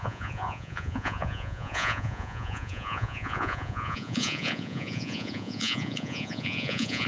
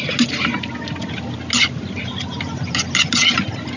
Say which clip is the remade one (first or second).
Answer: first